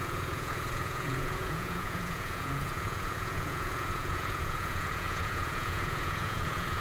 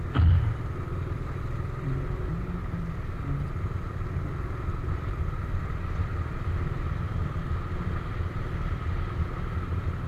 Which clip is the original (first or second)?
second